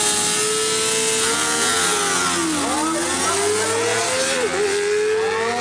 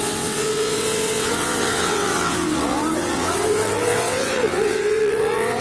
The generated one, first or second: second